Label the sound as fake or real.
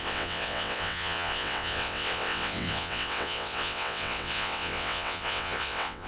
fake